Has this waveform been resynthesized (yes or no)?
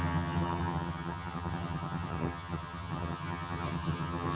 yes